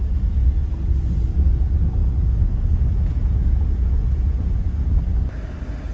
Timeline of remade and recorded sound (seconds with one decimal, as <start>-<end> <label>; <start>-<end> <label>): 0.0-2.0 recorded; 2.0-4.6 remade; 4.6-5.9 recorded